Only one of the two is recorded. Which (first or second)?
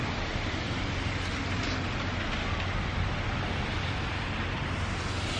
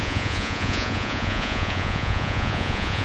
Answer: first